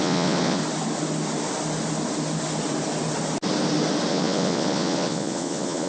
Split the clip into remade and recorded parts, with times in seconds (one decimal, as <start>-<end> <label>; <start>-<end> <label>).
0.0-0.6 remade; 0.6-4.1 recorded; 4.1-5.9 remade